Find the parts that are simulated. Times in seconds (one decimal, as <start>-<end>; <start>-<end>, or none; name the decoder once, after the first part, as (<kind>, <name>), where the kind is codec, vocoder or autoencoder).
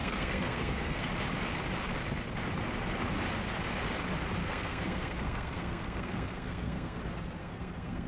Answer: 0.0-1.1 (codec, SNAC); 4.4-7.0; 7.4-8.1